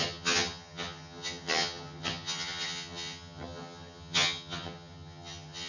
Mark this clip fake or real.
fake